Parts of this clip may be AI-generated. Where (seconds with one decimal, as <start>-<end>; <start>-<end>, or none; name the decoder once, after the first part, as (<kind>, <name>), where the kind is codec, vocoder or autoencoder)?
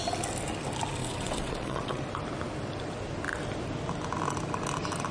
1.0-2.0 (vocoder, WaveNeXt)